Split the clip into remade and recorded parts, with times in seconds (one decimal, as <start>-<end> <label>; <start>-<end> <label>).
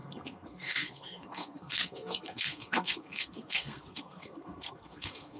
0.0-5.4 remade